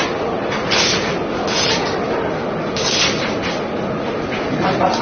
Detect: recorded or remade recorded